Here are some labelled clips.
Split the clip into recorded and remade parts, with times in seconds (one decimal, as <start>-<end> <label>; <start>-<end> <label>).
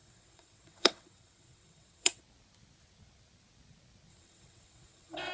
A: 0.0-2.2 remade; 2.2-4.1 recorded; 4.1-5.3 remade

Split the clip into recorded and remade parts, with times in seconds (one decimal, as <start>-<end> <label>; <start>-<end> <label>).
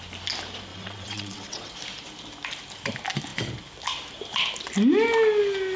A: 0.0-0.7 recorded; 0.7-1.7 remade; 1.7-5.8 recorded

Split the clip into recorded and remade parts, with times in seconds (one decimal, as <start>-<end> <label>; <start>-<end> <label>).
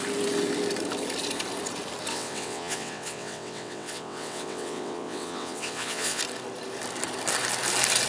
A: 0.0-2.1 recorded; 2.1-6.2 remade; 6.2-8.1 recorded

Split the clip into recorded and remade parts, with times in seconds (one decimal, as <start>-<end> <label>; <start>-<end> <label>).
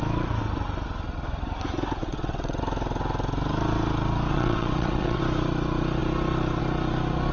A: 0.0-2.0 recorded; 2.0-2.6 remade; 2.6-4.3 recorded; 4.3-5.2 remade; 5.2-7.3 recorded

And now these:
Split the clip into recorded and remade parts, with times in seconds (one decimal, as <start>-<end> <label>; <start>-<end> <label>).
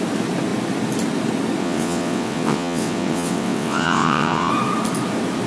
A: 0.0-1.6 recorded; 1.6-4.5 remade; 4.5-5.5 recorded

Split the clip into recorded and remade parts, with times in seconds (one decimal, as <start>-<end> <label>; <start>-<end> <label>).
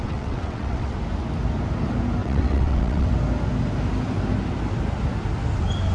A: 0.0-0.9 remade; 0.9-2.2 recorded; 2.2-3.1 remade; 3.1-5.9 recorded